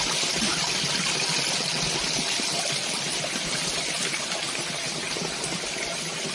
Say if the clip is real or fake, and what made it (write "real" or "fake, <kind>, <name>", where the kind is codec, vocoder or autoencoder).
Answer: real